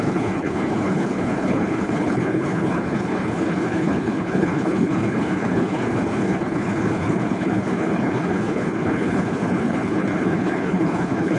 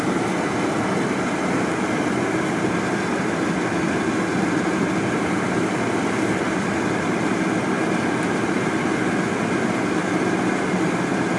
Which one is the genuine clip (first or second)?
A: second